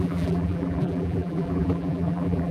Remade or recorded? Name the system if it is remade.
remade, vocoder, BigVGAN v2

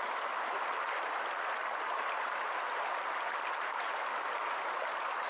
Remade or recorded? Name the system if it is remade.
recorded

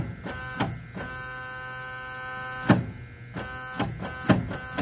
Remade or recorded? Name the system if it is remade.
recorded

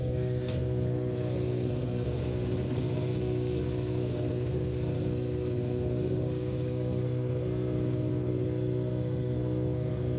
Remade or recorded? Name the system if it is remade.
remade, codec, SNAC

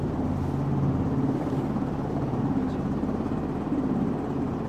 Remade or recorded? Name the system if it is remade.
recorded